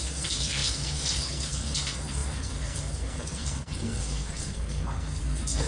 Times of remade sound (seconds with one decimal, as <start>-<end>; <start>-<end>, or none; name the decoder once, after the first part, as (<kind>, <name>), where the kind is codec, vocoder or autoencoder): 0.0-5.7 (codec, SNAC)